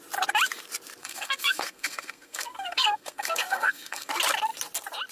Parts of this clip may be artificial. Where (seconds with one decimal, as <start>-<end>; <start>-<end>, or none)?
1.0-4.1